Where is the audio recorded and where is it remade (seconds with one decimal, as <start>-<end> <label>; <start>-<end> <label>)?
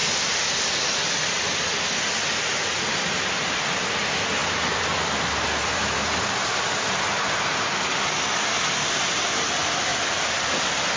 0.0-11.0 recorded